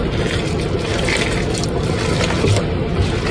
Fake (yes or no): no